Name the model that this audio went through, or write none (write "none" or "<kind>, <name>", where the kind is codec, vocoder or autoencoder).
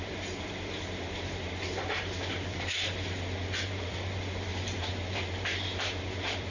vocoder, BigVGAN v2